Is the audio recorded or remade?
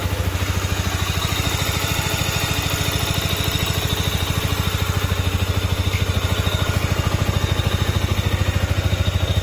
recorded